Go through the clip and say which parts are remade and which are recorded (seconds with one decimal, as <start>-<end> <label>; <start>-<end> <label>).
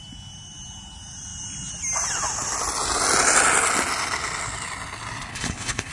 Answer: 0.0-5.3 recorded; 5.3-5.9 remade